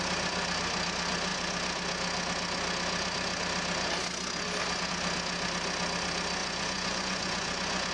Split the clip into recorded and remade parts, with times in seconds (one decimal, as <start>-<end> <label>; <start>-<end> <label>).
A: 0.0-6.4 recorded; 6.4-7.9 remade